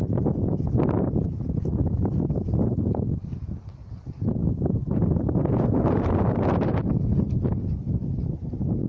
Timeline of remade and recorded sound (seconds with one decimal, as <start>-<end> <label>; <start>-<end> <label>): 0.0-3.8 recorded; 3.8-6.7 remade; 6.7-8.9 recorded